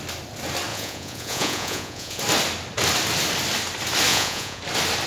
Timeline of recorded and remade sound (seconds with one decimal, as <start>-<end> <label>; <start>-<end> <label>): 0.0-0.7 recorded; 0.7-2.2 remade; 2.2-4.1 recorded; 4.1-4.6 remade; 4.6-5.1 recorded